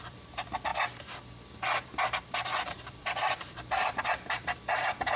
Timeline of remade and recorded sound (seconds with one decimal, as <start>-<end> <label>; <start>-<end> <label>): 0.0-0.7 remade; 0.7-2.2 recorded; 2.2-5.2 remade